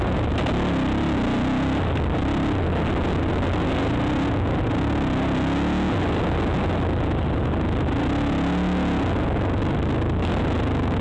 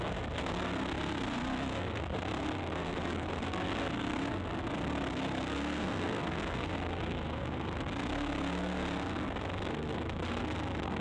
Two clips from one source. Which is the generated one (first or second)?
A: second